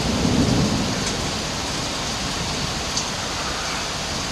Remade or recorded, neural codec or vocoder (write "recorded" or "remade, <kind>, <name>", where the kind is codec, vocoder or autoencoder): recorded